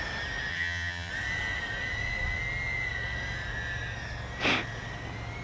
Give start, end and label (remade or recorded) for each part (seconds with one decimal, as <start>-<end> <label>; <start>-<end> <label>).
0.0-0.5 recorded; 0.5-1.1 remade; 1.1-5.4 recorded